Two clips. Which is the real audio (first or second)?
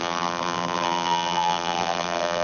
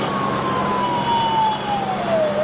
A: second